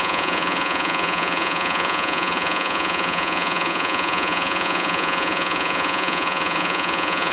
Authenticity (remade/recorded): remade